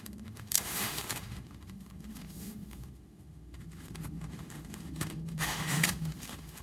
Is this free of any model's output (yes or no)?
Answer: no